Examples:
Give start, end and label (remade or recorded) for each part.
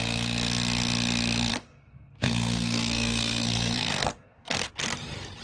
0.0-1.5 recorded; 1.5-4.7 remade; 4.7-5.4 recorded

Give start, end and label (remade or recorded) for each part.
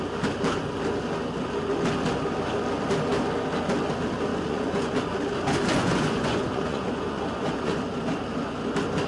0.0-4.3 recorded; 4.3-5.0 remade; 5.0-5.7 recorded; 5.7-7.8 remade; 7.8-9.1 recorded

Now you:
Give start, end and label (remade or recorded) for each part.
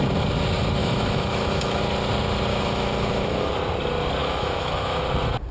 0.0-0.8 recorded; 0.8-1.8 remade; 1.8-2.5 recorded; 2.5-3.5 remade; 3.5-4.2 recorded; 4.2-5.0 remade; 5.0-5.5 recorded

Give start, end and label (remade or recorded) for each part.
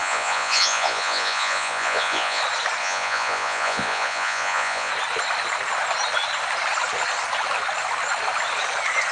0.0-2.4 remade; 2.4-2.8 recorded; 2.8-4.9 remade; 4.9-9.1 recorded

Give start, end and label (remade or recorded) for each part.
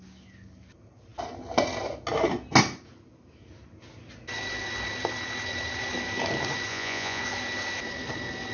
0.0-6.7 recorded; 6.7-7.2 remade; 7.2-8.5 recorded